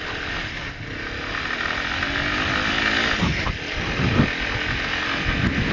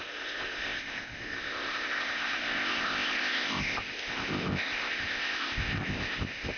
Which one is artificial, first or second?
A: second